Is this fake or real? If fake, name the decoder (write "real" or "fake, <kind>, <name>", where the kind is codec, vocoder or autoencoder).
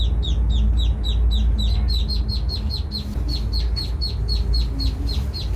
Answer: real